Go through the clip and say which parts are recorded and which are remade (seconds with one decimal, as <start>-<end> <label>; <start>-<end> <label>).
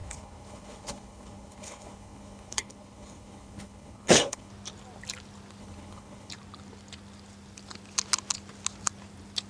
0.0-4.5 remade; 4.5-5.6 recorded; 5.6-6.3 remade; 6.3-9.5 recorded